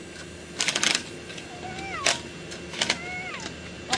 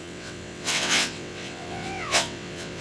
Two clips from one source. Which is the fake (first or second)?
second